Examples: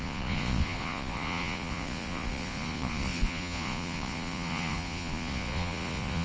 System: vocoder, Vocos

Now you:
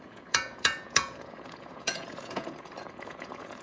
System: vocoder, Vocos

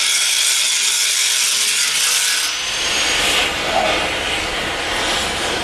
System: none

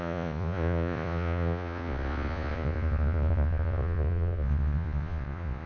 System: vocoder, Vocos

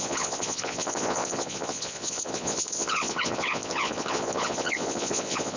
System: vocoder, Vocos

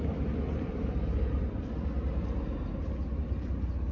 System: none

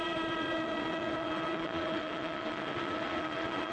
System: vocoder, Vocos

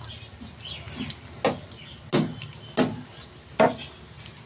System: none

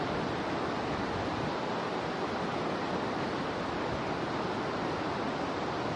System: none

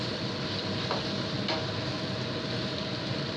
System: none